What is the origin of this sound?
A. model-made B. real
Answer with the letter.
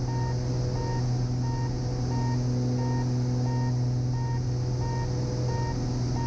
B